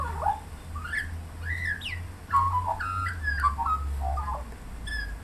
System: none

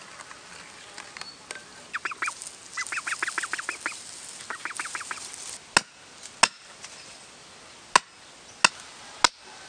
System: none